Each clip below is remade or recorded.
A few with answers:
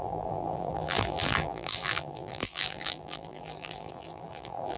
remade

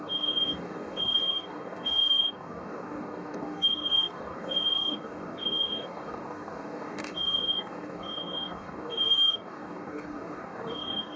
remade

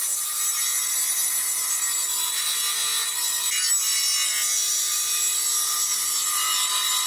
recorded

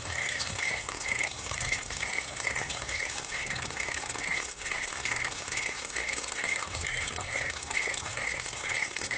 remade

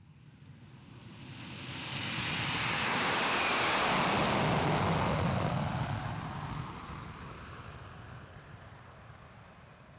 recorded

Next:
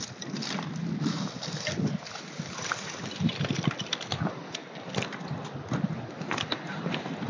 recorded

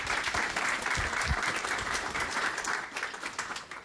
remade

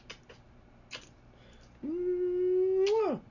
recorded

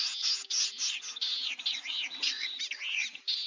recorded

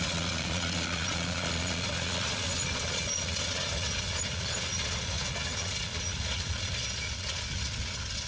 remade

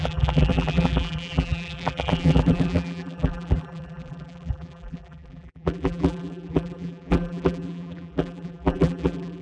remade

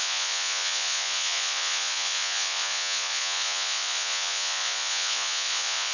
remade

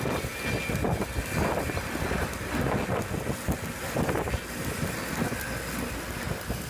recorded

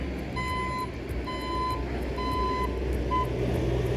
recorded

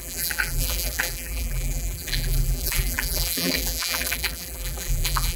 remade